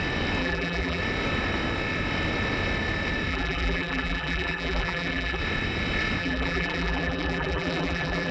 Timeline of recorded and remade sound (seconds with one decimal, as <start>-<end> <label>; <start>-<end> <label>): 0.0-0.4 recorded; 0.4-1.0 remade; 1.0-3.3 recorded; 3.3-5.4 remade; 5.4-6.2 recorded; 6.2-8.3 remade

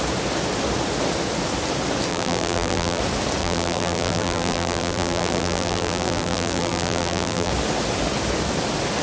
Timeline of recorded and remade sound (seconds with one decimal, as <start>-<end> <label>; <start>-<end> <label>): 0.0-2.1 recorded; 2.1-3.0 remade; 3.0-3.4 recorded; 3.4-7.5 remade; 7.5-9.0 recorded